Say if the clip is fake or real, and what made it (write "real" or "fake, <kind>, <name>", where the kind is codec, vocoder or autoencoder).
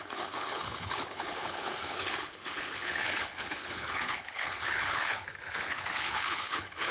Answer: fake, codec, HILCodec